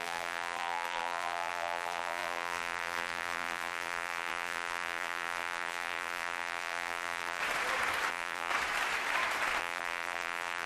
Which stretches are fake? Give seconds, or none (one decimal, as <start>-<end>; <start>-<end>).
0.0-7.4; 8.1-8.5; 9.6-10.7